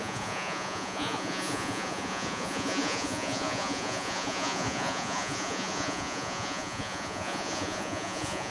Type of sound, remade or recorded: remade